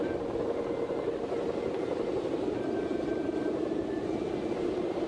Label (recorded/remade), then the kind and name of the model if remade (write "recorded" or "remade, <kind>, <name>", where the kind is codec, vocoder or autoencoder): recorded